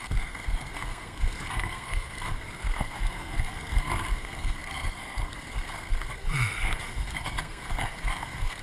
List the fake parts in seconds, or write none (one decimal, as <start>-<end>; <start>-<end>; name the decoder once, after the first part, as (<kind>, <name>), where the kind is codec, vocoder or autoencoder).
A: 0.0-8.6 (codec, SNAC)